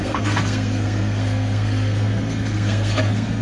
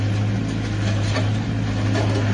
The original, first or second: second